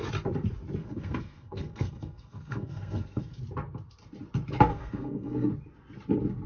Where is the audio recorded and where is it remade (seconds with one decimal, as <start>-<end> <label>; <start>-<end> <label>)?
0.0-0.8 recorded; 0.8-3.4 remade; 3.4-4.7 recorded; 4.7-5.5 remade; 5.5-6.5 recorded